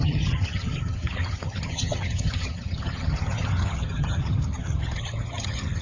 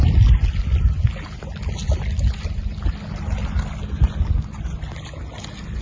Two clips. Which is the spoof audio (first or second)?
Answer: first